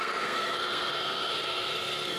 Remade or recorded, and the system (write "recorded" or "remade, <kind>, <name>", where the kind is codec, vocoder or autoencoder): remade, codec, SNAC